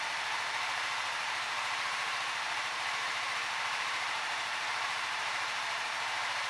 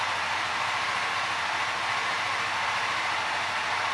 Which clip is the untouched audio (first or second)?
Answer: second